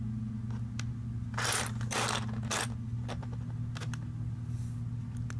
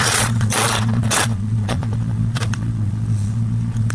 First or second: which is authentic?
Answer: first